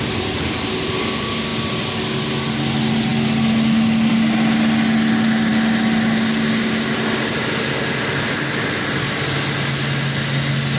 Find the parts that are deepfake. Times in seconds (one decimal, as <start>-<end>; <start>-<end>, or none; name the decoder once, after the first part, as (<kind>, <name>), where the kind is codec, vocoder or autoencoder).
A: none